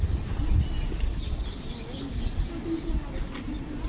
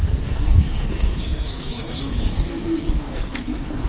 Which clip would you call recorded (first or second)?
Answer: first